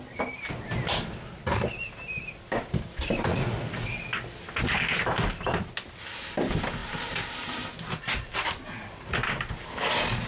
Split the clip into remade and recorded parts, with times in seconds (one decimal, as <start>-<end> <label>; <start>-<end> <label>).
0.0-3.3 recorded; 3.3-3.9 remade; 3.9-10.3 recorded